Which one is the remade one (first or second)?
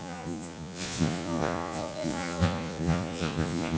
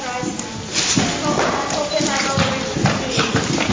first